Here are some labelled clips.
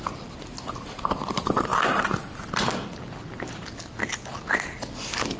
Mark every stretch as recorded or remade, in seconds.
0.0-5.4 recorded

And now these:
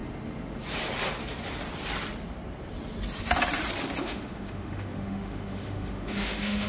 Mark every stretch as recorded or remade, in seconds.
0.0-4.0 recorded; 4.0-6.7 remade

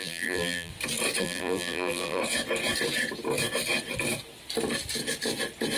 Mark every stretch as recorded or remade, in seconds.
0.0-0.7 remade; 0.7-1.2 recorded; 1.2-2.2 remade; 2.2-5.8 recorded

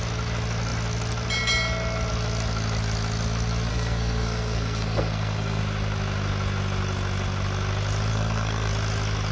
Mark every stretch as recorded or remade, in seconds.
0.0-3.7 recorded; 3.7-5.6 remade; 5.6-8.1 recorded; 8.1-8.7 remade; 8.7-9.3 recorded